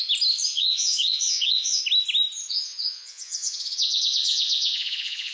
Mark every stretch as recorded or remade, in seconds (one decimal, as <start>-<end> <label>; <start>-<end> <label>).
0.0-0.5 recorded; 0.5-1.8 remade; 1.8-2.5 recorded; 2.5-5.3 remade